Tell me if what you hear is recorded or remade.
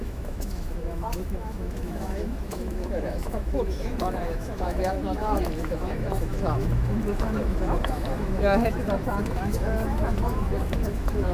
remade